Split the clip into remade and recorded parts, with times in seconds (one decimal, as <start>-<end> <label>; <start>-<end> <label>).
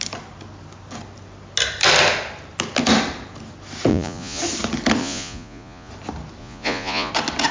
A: 0.0-3.9 recorded; 3.9-4.4 remade; 4.4-5.0 recorded; 5.0-5.9 remade; 5.9-6.4 recorded; 6.4-7.1 remade; 7.1-7.5 recorded